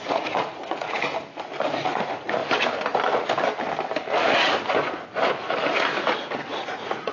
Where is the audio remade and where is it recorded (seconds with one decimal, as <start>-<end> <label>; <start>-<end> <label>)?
0.0-1.0 remade; 1.0-1.8 recorded; 1.8-2.4 remade; 2.4-6.5 recorded; 6.5-7.1 remade

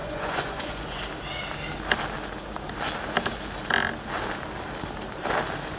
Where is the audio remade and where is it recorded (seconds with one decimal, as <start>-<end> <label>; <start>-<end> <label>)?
0.0-1.0 remade; 1.0-5.8 recorded

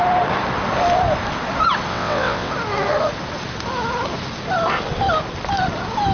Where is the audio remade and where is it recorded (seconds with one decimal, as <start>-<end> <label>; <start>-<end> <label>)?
0.0-1.9 recorded; 1.9-2.5 remade; 2.5-6.1 recorded

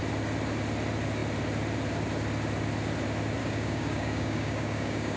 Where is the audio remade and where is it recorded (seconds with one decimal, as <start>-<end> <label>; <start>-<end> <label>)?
0.0-3.4 recorded; 3.4-5.2 remade

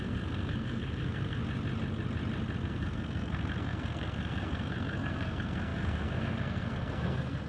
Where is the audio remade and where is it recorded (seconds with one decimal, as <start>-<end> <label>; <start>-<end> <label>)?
0.0-1.4 remade; 1.4-2.6 recorded; 2.6-7.5 remade

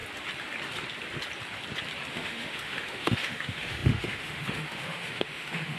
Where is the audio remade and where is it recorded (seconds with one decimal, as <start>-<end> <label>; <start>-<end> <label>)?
0.0-2.1 recorded; 2.1-5.8 remade

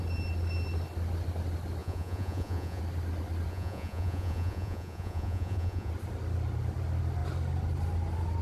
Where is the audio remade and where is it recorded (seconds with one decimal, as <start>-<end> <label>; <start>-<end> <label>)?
0.0-1.8 recorded; 1.8-2.8 remade; 2.8-3.5 recorded; 3.5-5.9 remade; 5.9-8.4 recorded